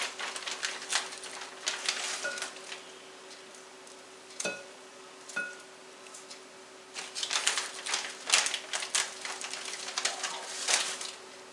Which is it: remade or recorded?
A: recorded